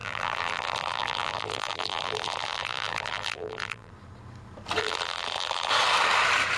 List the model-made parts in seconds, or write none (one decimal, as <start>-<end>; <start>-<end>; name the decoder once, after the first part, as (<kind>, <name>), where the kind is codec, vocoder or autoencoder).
0.0-3.9 (vocoder, BigVGAN v2); 4.8-5.7